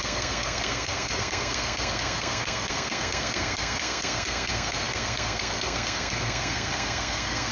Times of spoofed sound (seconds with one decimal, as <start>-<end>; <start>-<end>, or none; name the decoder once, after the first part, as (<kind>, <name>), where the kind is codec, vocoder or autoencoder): 0.0-7.5 (codec, SNAC)